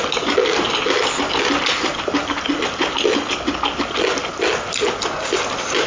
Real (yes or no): yes